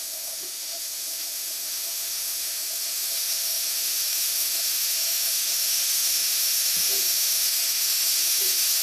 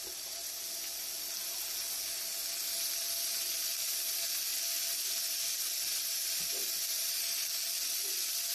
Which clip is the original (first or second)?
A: second